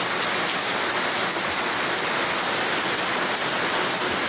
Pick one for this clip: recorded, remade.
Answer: recorded